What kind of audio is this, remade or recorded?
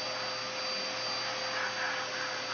recorded